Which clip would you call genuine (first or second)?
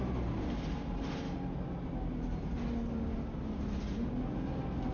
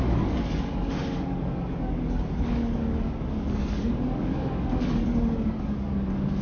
first